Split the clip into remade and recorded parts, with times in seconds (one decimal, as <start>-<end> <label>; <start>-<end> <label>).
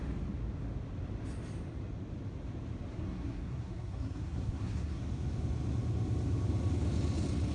0.0-2.9 recorded; 2.9-5.0 remade; 5.0-7.5 recorded